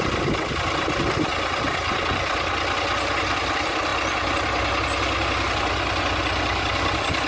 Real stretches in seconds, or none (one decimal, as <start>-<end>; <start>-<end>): 0.0-7.3